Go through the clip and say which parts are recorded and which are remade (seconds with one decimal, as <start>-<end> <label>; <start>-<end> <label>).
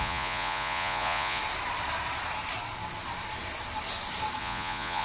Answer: 0.0-1.4 remade; 1.4-4.4 recorded; 4.4-5.0 remade